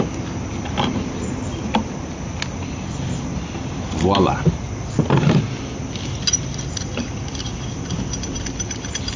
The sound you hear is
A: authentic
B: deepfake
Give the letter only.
A